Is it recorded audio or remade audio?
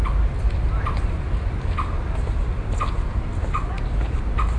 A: recorded